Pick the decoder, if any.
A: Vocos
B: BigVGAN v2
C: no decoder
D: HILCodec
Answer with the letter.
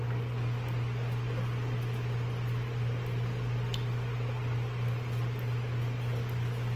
C